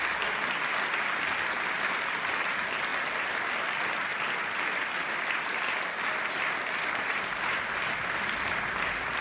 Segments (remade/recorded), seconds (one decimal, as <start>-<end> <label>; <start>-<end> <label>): 0.0-9.2 recorded